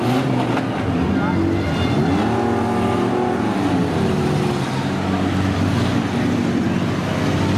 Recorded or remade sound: recorded